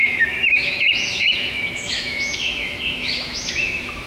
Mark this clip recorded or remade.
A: remade